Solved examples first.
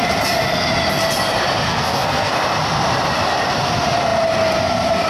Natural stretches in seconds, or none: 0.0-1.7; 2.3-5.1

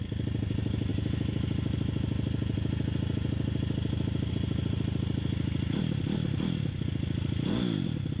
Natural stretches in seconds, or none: 0.0-8.2